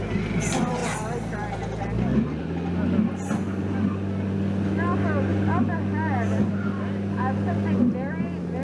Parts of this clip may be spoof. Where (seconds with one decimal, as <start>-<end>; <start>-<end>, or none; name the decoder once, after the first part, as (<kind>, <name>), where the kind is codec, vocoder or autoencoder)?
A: none